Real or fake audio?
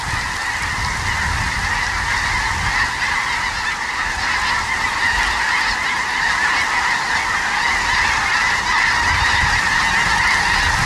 real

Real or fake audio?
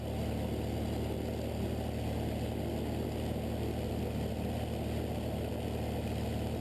real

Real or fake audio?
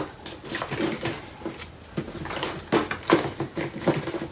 real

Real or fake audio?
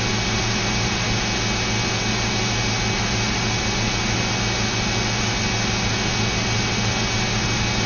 real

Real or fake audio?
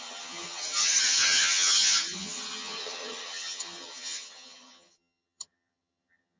fake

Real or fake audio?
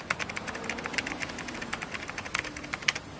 real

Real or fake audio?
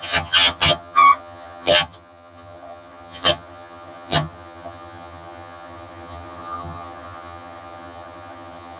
fake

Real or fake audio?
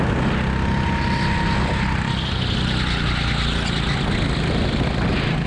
real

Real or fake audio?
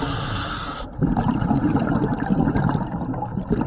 real